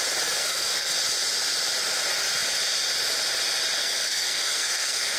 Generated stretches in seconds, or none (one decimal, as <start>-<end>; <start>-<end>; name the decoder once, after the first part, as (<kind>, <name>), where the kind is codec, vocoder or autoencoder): 0.4-0.9 (codec, SNAC); 3.8-5.2